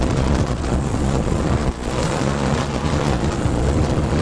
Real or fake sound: fake